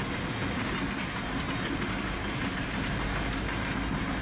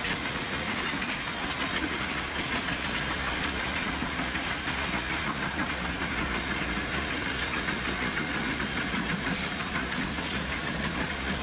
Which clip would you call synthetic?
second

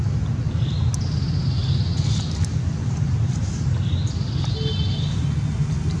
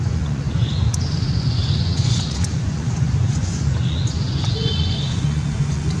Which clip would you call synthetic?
second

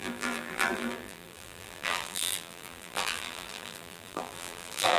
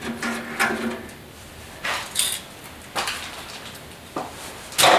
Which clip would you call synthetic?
first